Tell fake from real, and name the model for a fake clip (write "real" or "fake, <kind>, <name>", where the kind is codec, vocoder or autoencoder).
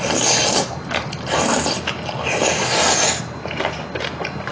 real